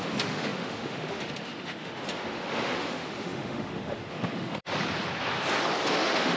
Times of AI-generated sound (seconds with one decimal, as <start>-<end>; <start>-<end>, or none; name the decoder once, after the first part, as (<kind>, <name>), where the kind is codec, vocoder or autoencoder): 0.0-4.7 (autoencoder, DAC-VAE); 5.9-6.4